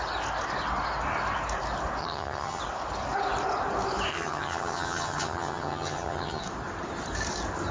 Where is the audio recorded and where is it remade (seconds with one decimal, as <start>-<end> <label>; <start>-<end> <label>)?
0.0-2.0 recorded; 2.0-2.6 remade; 2.6-4.1 recorded; 4.1-6.4 remade; 6.4-7.7 recorded